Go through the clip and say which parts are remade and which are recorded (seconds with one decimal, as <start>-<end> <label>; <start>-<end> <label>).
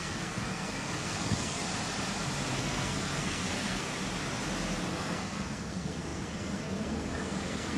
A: 0.0-1.7 remade; 1.7-2.6 recorded; 2.6-3.9 remade; 3.9-4.9 recorded; 4.9-7.8 remade